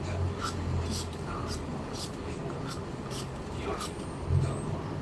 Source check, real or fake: real